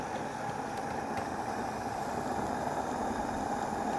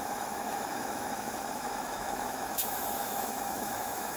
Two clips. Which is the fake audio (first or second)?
second